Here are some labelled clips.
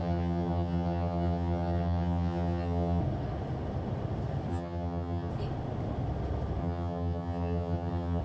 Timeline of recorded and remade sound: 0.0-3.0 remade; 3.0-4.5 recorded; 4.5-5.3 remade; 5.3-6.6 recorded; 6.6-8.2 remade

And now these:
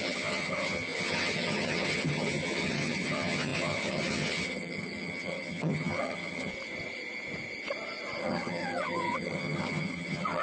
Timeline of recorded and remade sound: 0.0-6.5 remade; 6.5-8.2 recorded; 8.2-10.4 remade

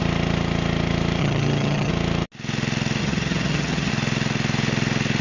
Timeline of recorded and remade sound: 0.0-1.2 recorded; 1.2-1.9 remade; 1.9-3.0 recorded; 3.0-3.9 remade; 3.9-5.2 recorded

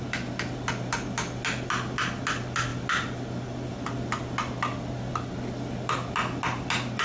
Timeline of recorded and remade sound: 0.0-7.0 recorded

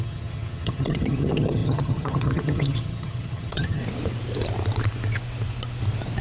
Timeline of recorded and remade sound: 0.0-3.8 remade; 3.8-6.2 recorded

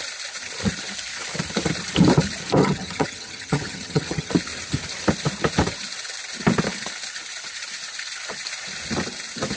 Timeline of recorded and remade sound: 0.0-2.6 recorded; 2.6-4.3 remade; 4.3-9.6 recorded

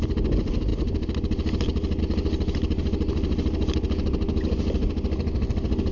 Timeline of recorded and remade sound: 0.0-5.9 recorded

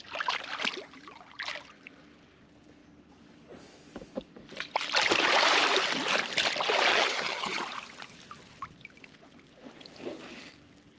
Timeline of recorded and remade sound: 0.0-6.9 recorded; 6.9-7.6 remade; 7.6-11.0 recorded